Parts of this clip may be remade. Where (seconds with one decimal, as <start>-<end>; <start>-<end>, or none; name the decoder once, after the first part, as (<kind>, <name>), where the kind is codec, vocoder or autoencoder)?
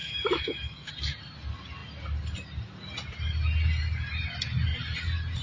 0.0-0.9 (autoencoder, DAC-VAE)